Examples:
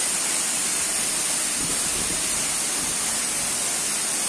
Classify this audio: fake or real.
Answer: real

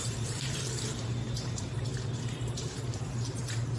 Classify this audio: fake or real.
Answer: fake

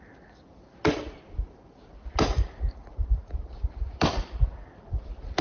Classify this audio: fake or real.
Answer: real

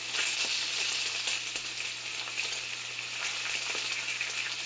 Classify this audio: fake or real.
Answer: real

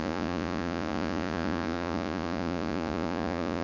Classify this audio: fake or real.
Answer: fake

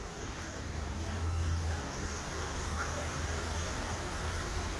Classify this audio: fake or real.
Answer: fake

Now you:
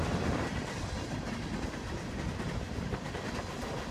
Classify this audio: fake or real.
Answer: real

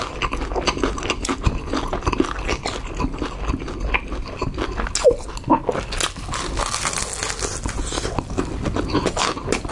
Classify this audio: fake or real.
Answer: real